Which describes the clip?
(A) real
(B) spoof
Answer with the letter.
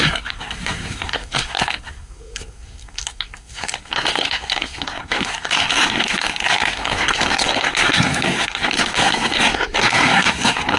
B